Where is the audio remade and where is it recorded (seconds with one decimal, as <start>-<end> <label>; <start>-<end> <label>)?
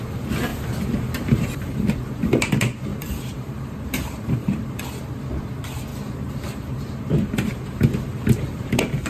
0.0-0.5 recorded; 0.5-1.8 remade; 1.8-2.9 recorded; 2.9-4.8 remade; 4.8-5.9 recorded; 5.9-9.1 remade